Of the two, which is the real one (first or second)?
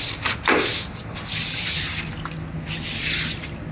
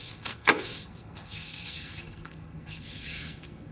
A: first